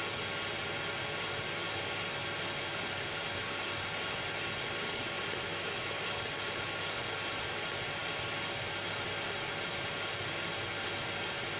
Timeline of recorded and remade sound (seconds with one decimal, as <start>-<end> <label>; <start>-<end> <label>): 0.0-5.5 recorded; 5.5-6.2 remade; 6.2-11.6 recorded